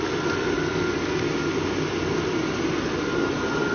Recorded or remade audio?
recorded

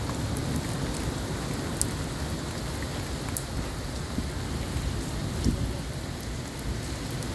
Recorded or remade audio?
recorded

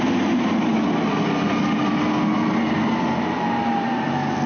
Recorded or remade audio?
recorded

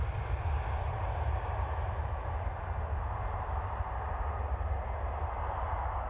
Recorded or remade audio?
recorded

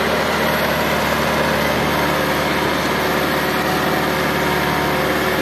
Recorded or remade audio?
recorded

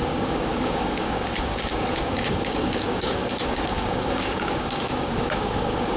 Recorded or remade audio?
remade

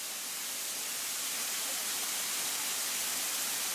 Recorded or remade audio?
recorded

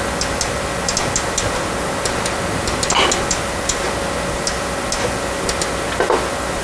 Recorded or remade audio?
recorded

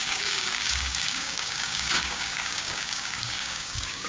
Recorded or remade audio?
remade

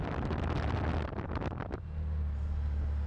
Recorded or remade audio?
recorded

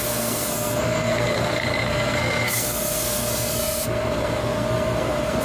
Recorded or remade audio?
remade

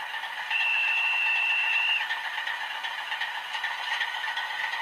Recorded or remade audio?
recorded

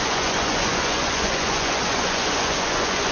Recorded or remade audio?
remade